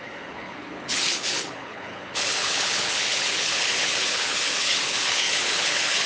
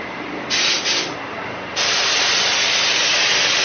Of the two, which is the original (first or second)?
second